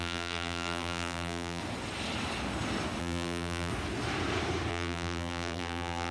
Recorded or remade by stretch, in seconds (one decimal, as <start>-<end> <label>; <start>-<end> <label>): 0.0-1.6 remade; 1.6-3.0 recorded; 3.0-3.7 remade; 3.7-4.7 recorded; 4.7-6.1 remade